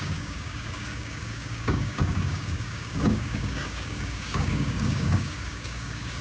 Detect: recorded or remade remade